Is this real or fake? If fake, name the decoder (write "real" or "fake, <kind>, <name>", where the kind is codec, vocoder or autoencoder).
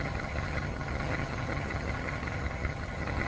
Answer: fake, vocoder, HiFi-GAN